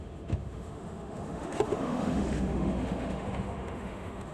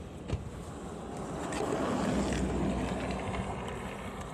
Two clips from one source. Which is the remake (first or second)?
first